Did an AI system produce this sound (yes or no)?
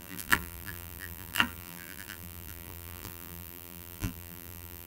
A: yes